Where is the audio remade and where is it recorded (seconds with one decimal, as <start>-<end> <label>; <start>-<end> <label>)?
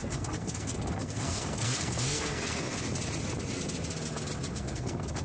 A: 0.0-2.7 remade; 2.7-4.5 recorded; 4.5-5.2 remade